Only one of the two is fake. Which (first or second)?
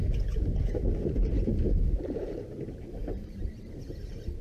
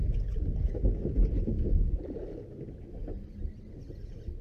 first